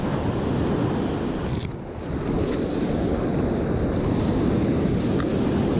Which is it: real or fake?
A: real